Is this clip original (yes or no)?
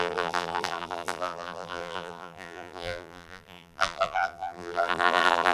no